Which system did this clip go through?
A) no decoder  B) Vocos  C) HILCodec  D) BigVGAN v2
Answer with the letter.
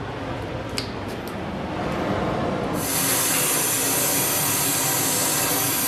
A